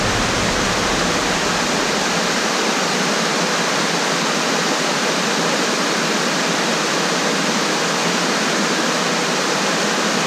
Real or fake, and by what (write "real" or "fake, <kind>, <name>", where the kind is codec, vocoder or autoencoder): real